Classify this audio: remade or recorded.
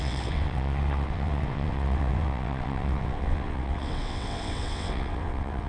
remade